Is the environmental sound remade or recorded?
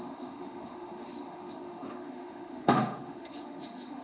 remade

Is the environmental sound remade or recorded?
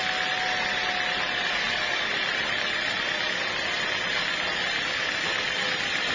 recorded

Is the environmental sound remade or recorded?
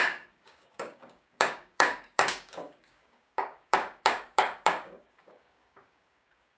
remade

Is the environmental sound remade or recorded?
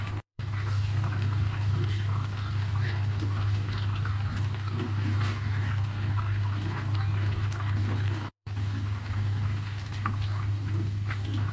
remade